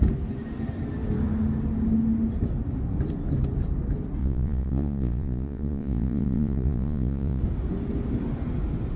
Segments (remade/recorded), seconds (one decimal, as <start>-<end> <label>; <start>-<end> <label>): 0.0-4.2 recorded; 4.2-7.4 remade; 7.4-9.0 recorded